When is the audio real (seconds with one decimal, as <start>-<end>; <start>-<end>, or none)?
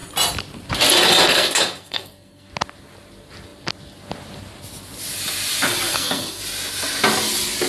0.0-1.3; 2.5-5.9; 6.4-7.7